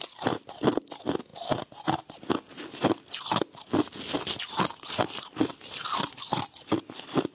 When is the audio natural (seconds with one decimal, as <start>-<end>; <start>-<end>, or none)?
0.0-7.3